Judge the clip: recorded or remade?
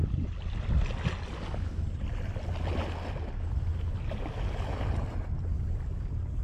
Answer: recorded